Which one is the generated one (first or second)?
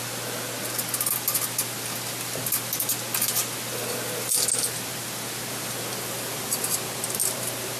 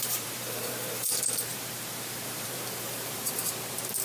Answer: second